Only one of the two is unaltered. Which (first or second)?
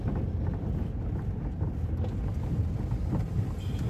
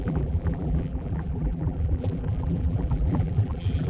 first